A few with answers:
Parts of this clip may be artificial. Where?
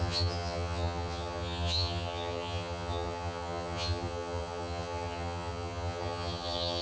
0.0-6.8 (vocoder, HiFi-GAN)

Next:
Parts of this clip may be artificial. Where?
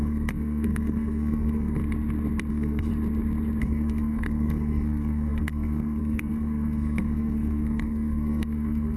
0.0-1.8 (codec, SNAC); 2.5-2.9; 3.6-9.0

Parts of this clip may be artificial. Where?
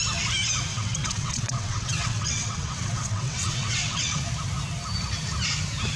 0.7-4.2 (vocoder, WaveNeXt)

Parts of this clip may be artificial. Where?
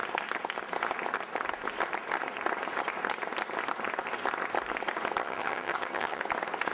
5.2-6.2 (vocoder, HiFi-GAN)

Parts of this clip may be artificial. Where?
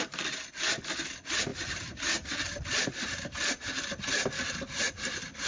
1.5-4.8 (vocoder, BigVGAN v2)